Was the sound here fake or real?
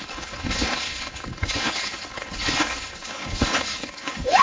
fake